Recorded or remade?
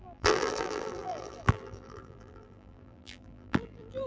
remade